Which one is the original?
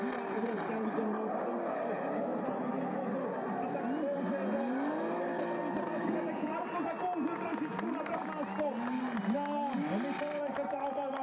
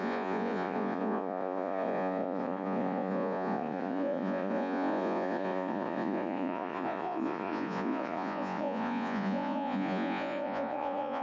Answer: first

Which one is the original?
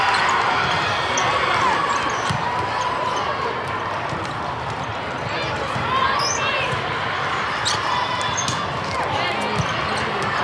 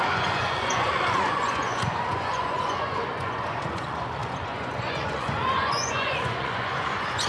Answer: first